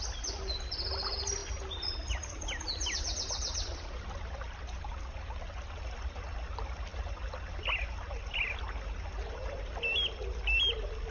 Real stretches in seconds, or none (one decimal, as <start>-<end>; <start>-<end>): 0.0-11.1